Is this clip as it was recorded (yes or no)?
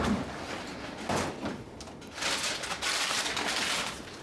yes